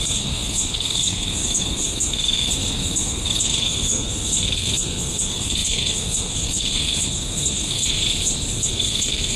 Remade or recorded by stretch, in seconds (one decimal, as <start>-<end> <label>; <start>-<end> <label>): 0.0-8.0 remade; 8.0-8.6 recorded; 8.6-9.4 remade